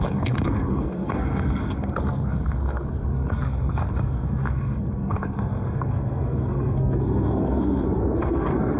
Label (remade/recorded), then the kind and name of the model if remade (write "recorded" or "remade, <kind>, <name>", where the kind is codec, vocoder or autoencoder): remade, codec, SNAC